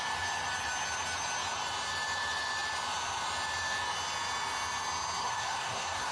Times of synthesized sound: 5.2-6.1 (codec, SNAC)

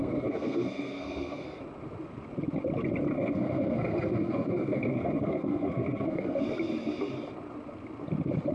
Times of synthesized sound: 0.0-1.6 (codec, SNAC); 3.1-6.4